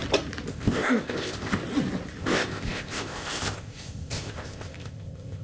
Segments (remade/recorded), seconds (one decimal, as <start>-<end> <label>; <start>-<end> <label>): 0.0-0.5 recorded; 0.5-1.6 remade; 1.6-2.2 recorded; 2.2-5.4 remade